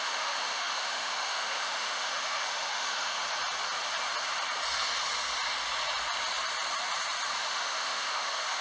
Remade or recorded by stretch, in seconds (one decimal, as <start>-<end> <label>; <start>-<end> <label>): 0.0-3.2 remade; 3.2-7.4 recorded; 7.4-8.6 remade